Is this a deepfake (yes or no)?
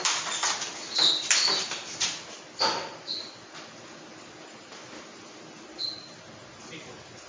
no